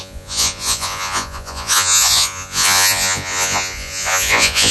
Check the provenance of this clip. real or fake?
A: fake